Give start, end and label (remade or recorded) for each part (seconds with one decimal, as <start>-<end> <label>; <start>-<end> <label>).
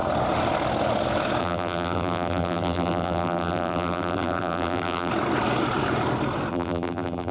0.0-1.4 recorded; 1.4-5.1 remade; 5.1-6.5 recorded; 6.5-7.3 remade